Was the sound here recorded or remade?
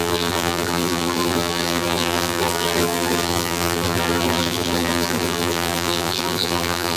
remade